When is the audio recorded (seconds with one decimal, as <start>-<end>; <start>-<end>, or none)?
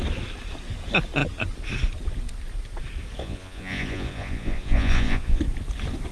0.0-3.2; 5.4-6.1